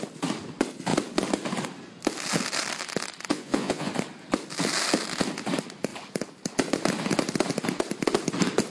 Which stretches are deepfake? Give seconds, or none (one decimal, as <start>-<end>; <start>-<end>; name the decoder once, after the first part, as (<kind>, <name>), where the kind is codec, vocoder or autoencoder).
3.3-3.9 (vocoder, Vocos)